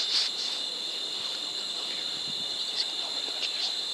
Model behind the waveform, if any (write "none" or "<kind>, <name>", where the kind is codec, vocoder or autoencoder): none